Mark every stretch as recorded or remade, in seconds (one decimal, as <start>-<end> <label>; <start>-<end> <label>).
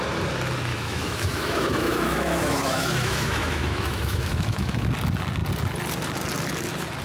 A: 0.0-0.7 recorded; 0.7-4.9 remade; 4.9-7.0 recorded